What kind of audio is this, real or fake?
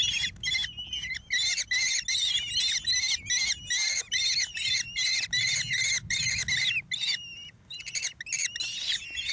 real